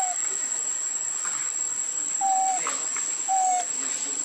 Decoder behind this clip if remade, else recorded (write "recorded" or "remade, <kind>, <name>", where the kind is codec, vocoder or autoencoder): recorded